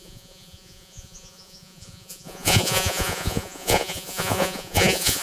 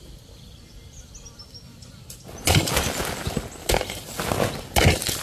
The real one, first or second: second